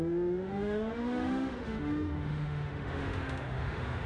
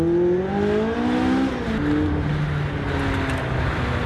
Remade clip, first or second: first